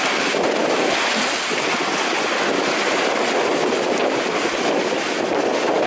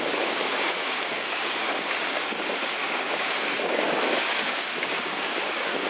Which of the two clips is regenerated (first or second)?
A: second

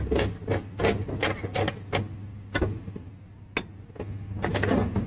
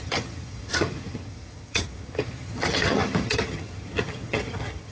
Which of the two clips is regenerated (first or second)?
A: second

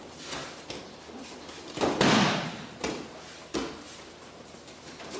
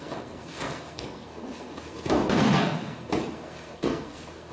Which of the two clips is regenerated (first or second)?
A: second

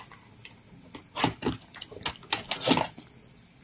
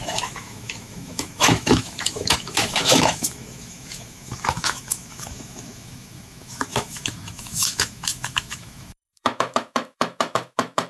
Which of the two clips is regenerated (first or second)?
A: second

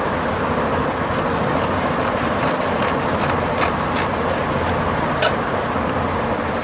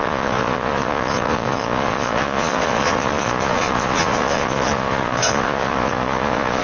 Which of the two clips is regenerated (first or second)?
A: second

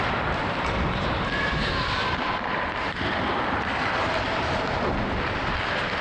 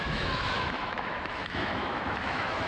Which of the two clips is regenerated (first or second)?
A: second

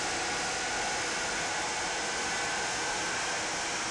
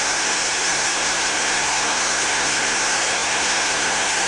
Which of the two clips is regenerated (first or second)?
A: second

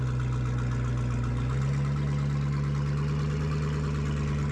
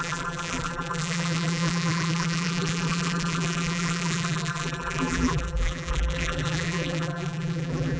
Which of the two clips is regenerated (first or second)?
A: second